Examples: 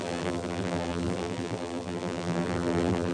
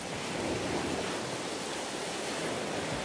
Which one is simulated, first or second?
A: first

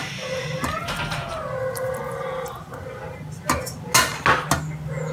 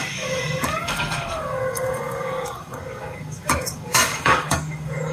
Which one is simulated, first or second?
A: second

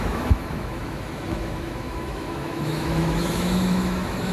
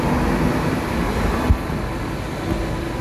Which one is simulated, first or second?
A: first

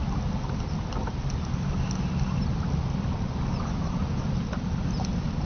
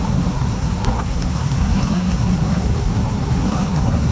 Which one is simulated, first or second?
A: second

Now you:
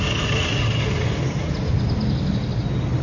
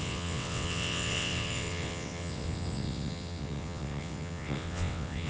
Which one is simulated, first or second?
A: second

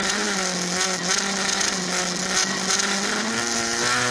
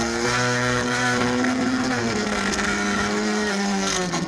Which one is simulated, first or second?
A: second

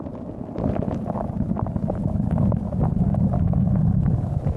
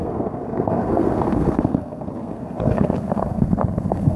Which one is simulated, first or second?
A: second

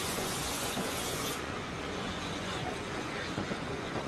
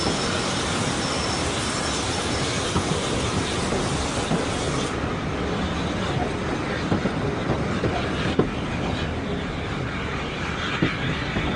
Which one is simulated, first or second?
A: first